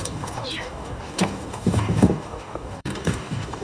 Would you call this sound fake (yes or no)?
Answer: yes